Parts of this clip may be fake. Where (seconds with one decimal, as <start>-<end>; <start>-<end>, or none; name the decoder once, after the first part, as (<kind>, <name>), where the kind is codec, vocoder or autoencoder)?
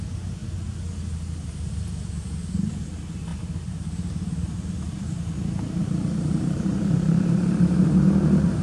3.3-7.9 (vocoder, BigVGAN v2)